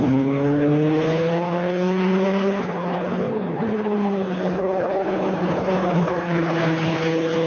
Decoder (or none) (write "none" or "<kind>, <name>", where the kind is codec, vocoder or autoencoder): codec, HILCodec